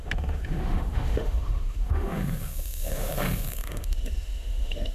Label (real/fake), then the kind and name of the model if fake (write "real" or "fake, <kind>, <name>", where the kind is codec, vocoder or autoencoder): fake, autoencoder, DAC-VAE